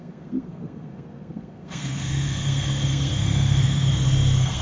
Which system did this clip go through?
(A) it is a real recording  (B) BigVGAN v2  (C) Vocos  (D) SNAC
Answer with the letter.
D